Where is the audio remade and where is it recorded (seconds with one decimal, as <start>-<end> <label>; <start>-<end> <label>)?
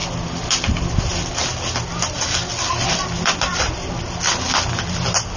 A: 0.0-5.4 recorded